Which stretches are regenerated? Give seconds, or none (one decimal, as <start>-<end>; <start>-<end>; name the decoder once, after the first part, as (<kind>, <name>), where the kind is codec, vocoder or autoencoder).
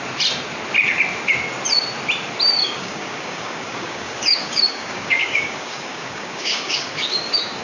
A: 2.6-7.6 (codec, DAC)